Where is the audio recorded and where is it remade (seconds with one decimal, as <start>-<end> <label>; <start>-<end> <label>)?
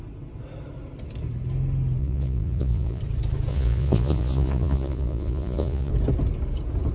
0.0-2.0 recorded; 2.0-3.0 remade; 3.0-3.5 recorded; 3.5-5.9 remade; 5.9-6.9 recorded